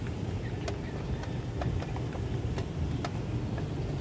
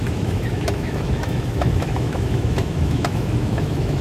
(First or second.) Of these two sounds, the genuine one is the first